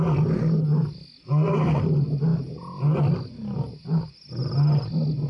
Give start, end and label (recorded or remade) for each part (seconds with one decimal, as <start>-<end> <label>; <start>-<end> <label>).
0.0-5.3 recorded